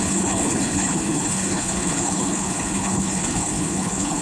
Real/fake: fake